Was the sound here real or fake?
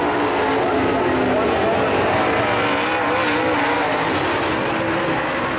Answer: real